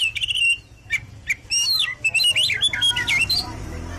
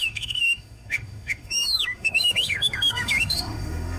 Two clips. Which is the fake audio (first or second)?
second